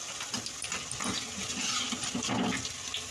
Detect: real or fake real